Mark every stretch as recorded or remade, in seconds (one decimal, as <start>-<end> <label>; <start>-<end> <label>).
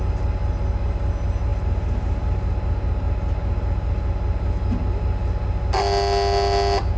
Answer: 0.0-7.0 recorded